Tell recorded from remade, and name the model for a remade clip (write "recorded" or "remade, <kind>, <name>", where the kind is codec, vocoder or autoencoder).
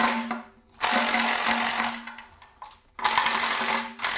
recorded